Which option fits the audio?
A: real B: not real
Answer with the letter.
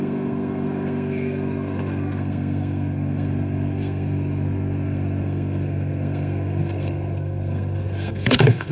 B